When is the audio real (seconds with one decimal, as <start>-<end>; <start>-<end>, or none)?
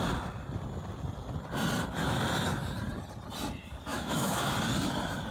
0.0-3.9; 4.5-5.3